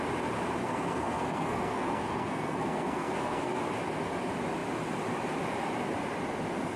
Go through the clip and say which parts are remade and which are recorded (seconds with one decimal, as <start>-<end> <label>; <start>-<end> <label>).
0.0-0.6 recorded; 0.6-3.6 remade; 3.6-6.8 recorded